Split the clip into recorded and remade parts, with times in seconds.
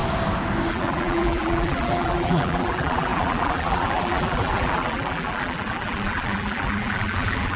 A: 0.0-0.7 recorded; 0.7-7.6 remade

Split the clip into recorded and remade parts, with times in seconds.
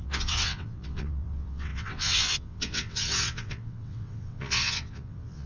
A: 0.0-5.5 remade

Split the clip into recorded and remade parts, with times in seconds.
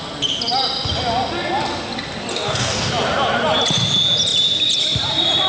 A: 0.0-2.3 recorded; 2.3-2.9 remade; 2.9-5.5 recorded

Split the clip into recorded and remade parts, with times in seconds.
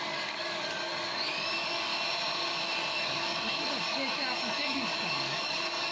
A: 0.0-1.9 remade; 1.9-2.9 recorded; 2.9-5.9 remade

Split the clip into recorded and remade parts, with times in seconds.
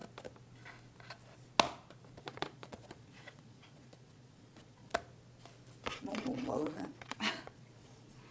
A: 0.0-2.2 recorded; 2.2-4.9 remade; 4.9-5.9 recorded; 5.9-8.3 remade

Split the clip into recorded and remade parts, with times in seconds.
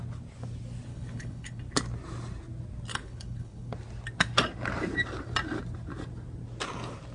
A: 0.0-0.9 recorded; 0.9-1.6 remade; 1.6-2.9 recorded; 2.9-3.7 remade; 3.7-7.1 recorded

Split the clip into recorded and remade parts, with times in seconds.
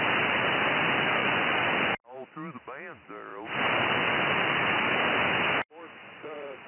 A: 0.0-1.2 recorded; 1.2-1.8 remade; 1.8-6.0 recorded; 6.0-6.7 remade